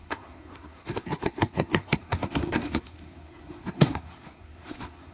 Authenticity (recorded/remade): remade